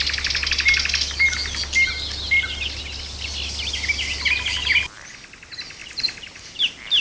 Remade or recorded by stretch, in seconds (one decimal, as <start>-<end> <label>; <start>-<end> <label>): 0.0-5.8 recorded; 5.8-6.6 remade; 6.6-7.0 recorded